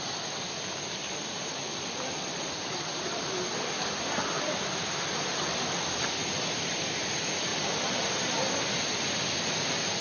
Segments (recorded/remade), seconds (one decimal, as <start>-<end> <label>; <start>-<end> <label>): 0.0-1.7 recorded; 1.7-2.9 remade; 2.9-5.5 recorded; 5.5-6.0 remade; 6.0-7.5 recorded; 7.5-8.1 remade; 8.1-10.0 recorded